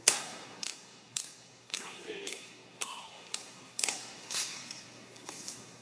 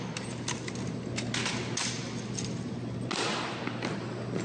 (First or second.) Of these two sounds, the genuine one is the second